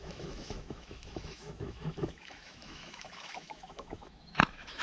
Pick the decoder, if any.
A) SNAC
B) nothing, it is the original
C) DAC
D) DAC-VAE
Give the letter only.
D